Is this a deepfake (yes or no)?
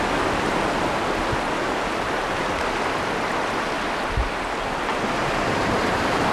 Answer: no